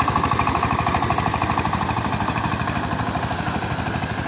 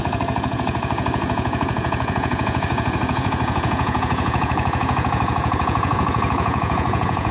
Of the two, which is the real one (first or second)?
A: first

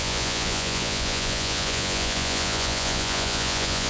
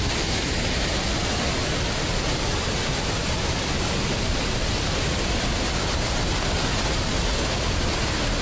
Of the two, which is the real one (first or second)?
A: second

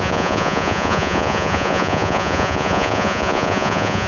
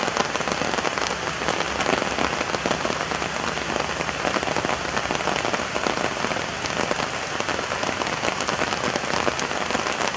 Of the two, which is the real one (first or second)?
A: second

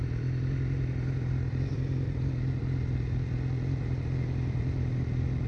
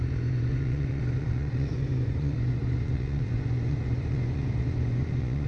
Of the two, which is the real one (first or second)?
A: first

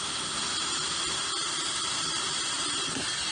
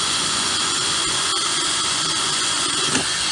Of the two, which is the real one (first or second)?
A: first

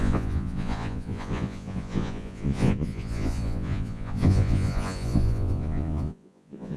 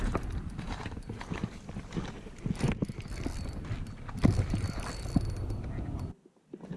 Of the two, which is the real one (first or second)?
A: second